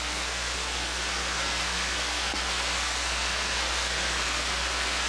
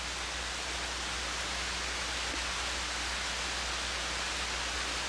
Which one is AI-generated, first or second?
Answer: first